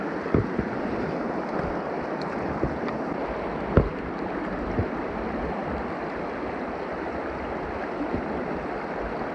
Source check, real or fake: real